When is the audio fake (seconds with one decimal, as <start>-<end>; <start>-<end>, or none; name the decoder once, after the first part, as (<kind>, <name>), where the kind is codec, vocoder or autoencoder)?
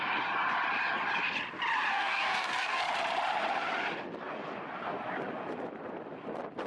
1.9-2.8 (codec, DAC)